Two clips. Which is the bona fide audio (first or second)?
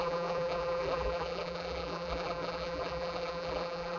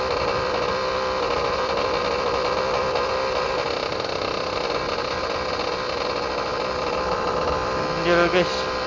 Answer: second